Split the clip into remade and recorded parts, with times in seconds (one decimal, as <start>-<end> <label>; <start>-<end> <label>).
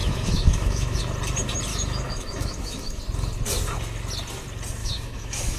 0.0-1.0 remade; 1.0-1.7 recorded; 1.7-3.0 remade; 3.0-4.8 recorded; 4.8-5.6 remade